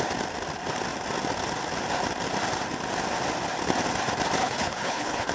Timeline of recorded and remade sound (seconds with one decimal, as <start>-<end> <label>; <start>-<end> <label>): 0.0-4.4 recorded; 4.4-5.3 remade